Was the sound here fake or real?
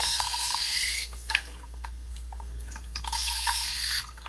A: fake